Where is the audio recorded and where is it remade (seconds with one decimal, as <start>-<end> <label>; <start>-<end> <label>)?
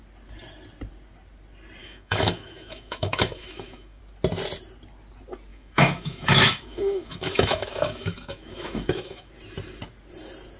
0.0-1.8 recorded; 1.8-4.0 remade; 4.0-5.5 recorded; 5.5-9.3 remade; 9.3-10.6 recorded